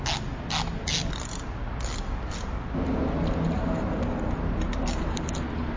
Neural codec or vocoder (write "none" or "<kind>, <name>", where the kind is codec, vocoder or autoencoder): none